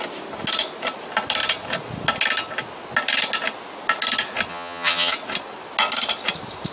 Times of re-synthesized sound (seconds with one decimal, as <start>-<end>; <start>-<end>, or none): 4.5-5.1